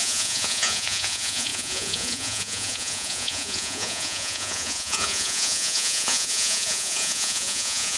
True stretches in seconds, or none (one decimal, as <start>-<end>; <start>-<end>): none